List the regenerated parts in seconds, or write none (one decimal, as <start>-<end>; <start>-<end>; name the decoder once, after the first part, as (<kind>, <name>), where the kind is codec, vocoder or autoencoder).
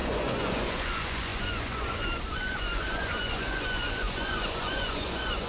0.0-5.5 (vocoder, Vocos)